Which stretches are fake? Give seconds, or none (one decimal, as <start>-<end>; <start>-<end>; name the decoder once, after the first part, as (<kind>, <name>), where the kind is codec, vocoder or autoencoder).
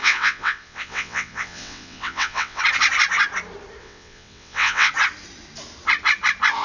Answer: 0.0-2.6 (vocoder, WaveNeXt); 3.8-4.9